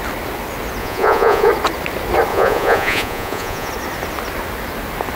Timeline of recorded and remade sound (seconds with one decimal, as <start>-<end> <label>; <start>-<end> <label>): 0.0-0.8 recorded; 0.8-1.5 remade; 1.5-2.3 recorded; 2.3-3.7 remade; 3.7-5.2 recorded